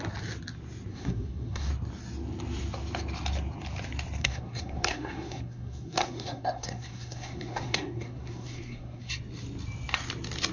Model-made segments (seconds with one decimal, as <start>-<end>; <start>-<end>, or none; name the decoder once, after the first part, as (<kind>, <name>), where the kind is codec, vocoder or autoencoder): 0.9-1.7 (codec, SNAC); 4.2-9.1